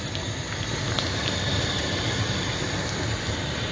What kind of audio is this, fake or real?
real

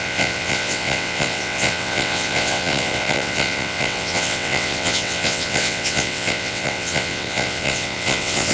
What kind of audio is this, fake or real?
fake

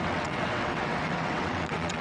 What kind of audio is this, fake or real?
fake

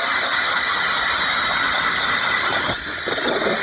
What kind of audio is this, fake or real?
real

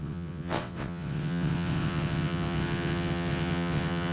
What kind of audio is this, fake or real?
fake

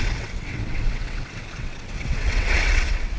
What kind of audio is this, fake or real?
fake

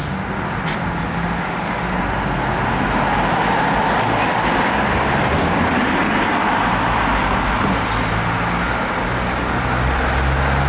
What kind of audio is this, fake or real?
real